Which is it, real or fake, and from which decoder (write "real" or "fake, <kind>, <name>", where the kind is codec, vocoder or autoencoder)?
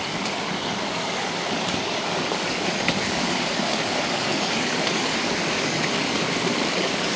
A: fake, codec, DAC